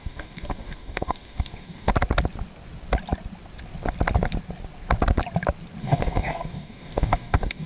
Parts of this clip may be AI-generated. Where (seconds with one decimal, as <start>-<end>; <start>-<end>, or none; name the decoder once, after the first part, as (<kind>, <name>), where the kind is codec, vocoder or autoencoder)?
0.0-1.9 (codec, DAC); 5.8-7.7